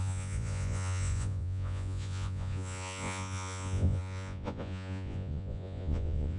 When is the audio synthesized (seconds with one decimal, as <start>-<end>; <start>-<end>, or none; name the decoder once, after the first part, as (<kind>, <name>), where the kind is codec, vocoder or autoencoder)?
0.0-6.4 (vocoder, Vocos)